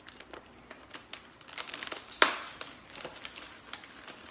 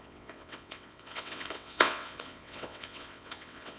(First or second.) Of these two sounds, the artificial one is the second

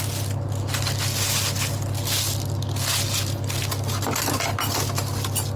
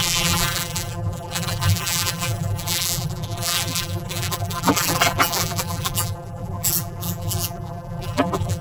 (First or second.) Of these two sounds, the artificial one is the second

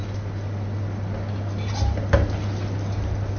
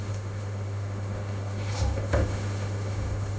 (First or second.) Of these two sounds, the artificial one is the second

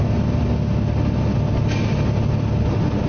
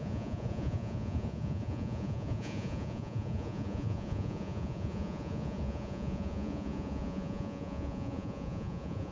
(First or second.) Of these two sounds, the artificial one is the second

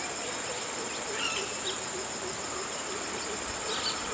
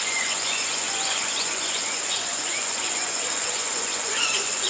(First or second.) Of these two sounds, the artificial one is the second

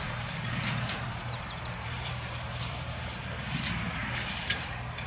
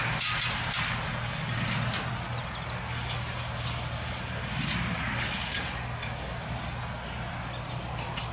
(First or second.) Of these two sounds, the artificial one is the first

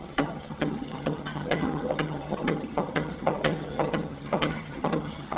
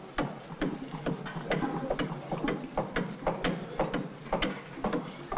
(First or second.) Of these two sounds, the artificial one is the first